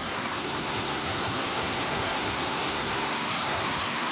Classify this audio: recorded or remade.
remade